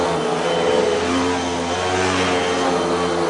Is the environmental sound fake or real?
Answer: real